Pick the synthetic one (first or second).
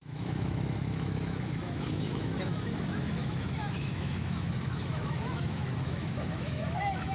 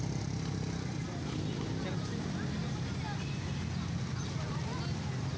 first